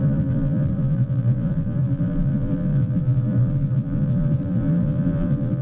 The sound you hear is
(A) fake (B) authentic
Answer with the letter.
A